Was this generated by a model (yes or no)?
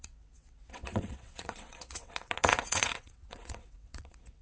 yes